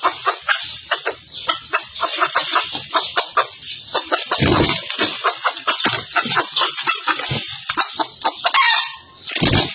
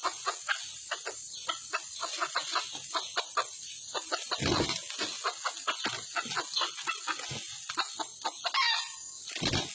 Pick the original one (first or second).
second